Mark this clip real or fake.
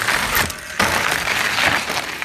real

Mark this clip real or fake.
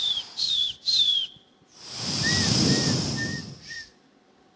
fake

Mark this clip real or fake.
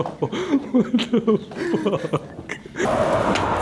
real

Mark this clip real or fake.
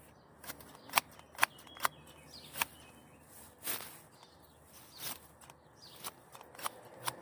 real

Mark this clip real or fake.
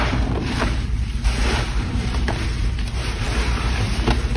fake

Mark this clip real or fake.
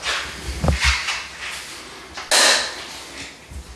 real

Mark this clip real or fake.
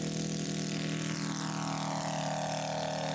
real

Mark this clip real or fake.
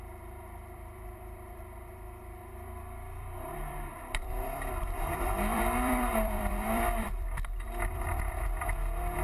fake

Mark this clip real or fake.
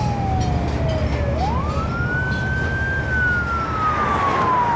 real